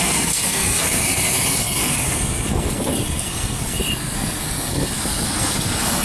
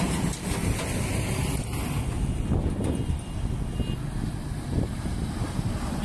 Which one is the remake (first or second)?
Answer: first